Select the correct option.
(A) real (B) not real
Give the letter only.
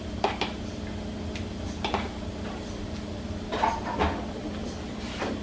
A